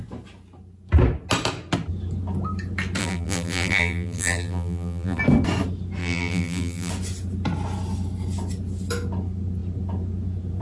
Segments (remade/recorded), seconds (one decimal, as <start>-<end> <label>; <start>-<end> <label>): 0.0-3.0 recorded; 3.0-5.2 remade; 5.2-6.0 recorded; 6.0-6.9 remade; 6.9-10.6 recorded